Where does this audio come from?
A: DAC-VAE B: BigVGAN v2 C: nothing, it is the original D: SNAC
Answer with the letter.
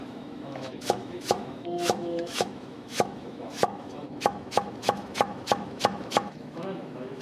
A